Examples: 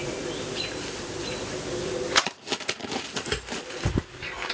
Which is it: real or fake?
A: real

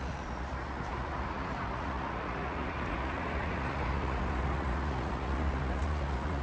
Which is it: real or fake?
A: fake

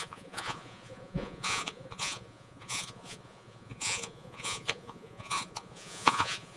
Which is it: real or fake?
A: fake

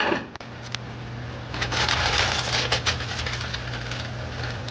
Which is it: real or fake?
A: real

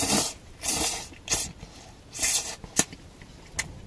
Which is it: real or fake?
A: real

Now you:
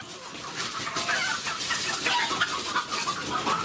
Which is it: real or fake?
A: real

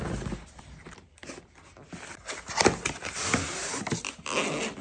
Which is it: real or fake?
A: real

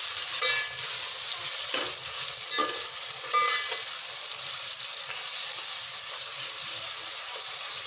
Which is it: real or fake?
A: real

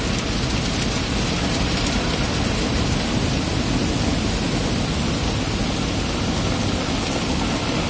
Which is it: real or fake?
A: real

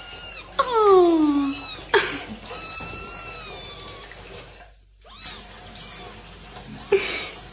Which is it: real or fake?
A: real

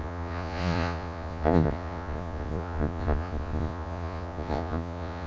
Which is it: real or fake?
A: fake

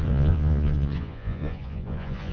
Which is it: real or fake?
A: fake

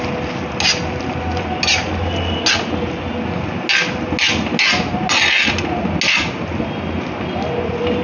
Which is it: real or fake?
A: real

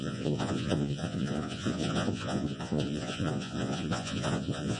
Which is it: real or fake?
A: fake